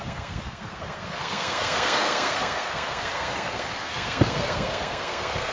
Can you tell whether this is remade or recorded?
remade